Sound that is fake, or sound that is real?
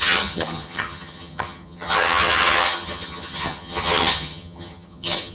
fake